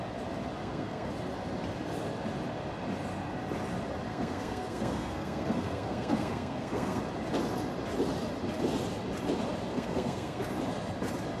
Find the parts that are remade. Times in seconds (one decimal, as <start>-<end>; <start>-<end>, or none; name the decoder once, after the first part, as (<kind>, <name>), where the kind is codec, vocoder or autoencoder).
0.6-1.1 (codec, SNAC); 4.1-7.0; 9.7-10.4